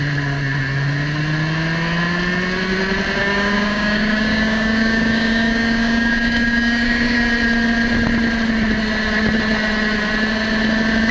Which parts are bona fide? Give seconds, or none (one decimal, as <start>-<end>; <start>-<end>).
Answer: 0.0-3.2; 7.2-11.1

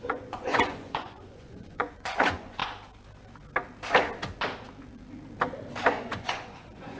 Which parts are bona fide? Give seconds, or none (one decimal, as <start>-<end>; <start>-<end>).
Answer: 2.6-5.9